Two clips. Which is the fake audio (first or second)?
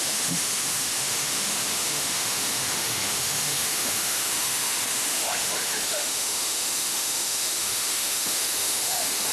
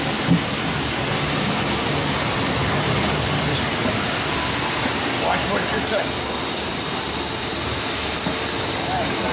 first